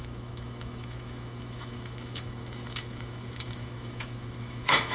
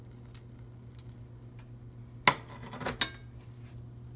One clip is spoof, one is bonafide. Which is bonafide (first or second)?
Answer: second